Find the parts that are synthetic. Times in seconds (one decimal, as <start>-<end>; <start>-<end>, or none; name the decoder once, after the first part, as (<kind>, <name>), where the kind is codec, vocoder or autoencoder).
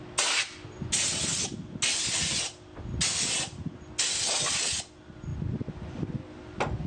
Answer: none